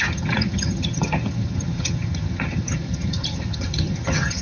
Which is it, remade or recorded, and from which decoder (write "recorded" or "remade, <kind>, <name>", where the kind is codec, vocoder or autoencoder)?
remade, vocoder, HiFi-GAN